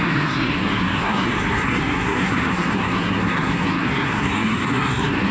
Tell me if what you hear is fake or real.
fake